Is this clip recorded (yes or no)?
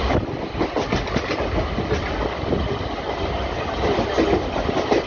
yes